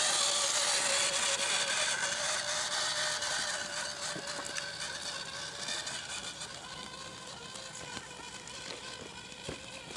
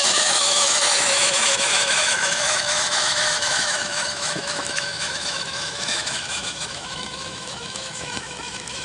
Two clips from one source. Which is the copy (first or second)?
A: second